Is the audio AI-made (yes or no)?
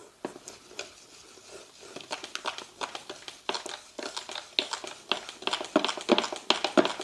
no